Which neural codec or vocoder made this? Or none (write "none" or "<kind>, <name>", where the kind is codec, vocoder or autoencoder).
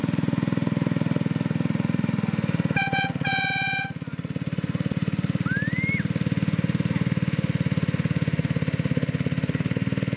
none